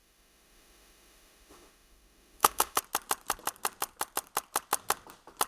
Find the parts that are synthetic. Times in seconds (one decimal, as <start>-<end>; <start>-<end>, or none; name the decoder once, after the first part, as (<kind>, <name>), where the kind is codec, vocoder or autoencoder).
0.0-2.8 (autoencoder, DAC-VAE)